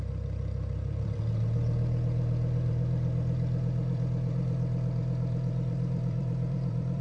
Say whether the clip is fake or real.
fake